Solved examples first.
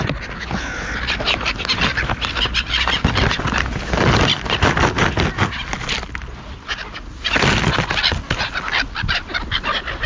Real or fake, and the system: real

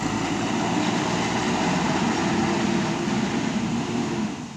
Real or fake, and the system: real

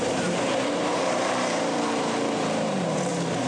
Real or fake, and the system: fake, vocoder, BigVGAN v2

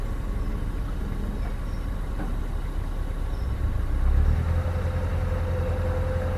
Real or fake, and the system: real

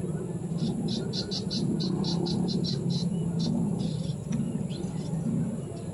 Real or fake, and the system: real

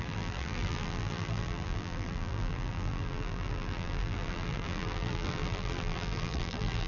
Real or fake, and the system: fake, vocoder, BigVGAN v2